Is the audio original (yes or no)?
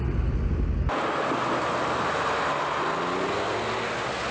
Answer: yes